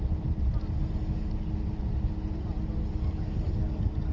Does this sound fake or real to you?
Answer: real